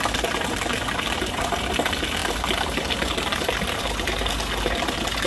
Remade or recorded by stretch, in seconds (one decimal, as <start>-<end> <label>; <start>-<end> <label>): 0.0-5.3 recorded

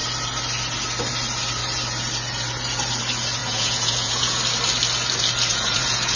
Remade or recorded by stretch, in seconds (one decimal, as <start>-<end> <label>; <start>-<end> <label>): 0.0-3.4 recorded; 3.4-4.4 remade; 4.4-5.5 recorded; 5.5-6.2 remade

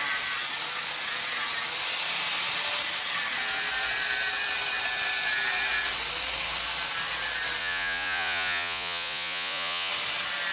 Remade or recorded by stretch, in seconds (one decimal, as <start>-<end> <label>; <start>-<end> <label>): 0.0-7.6 recorded; 7.6-9.9 remade; 9.9-10.5 recorded

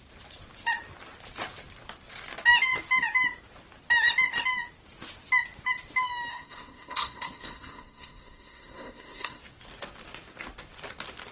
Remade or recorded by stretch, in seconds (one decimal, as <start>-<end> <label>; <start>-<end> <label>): 0.0-6.3 recorded; 6.3-9.4 remade; 9.4-11.3 recorded

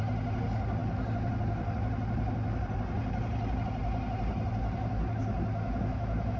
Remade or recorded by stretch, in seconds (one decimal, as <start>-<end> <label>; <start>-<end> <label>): 0.0-5.5 recorded; 5.5-6.4 remade

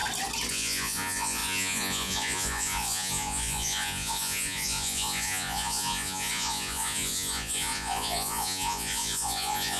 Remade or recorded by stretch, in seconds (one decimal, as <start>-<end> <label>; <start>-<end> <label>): 0.0-0.5 recorded; 0.5-9.8 remade

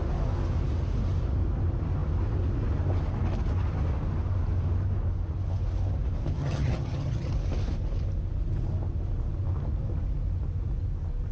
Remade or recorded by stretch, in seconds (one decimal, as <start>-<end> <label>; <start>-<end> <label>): 0.0-6.4 recorded; 6.4-7.3 remade; 7.3-11.3 recorded

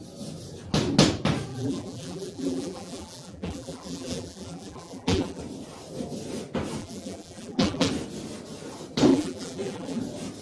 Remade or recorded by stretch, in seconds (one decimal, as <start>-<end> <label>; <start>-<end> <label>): 0.0-1.5 recorded; 1.5-5.4 remade; 5.4-6.8 recorded; 6.8-7.9 remade; 7.9-9.1 recorded; 9.1-10.0 remade; 10.0-10.4 recorded